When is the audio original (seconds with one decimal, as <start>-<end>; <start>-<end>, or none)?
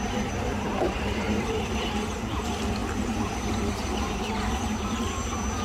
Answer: 0.0-0.7; 1.8-5.6